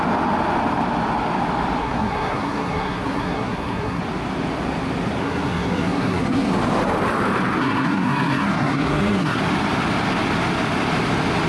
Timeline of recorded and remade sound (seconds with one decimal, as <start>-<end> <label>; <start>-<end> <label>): 0.0-1.8 recorded; 1.8-4.0 remade; 4.0-5.2 recorded; 5.2-6.5 remade; 6.5-7.6 recorded; 7.6-9.4 remade; 9.4-11.5 recorded